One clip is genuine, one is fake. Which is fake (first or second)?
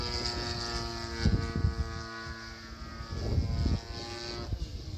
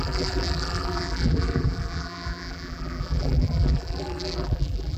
second